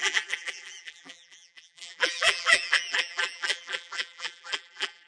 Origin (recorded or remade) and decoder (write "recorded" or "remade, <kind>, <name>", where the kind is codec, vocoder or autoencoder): remade, vocoder, BigVGAN v2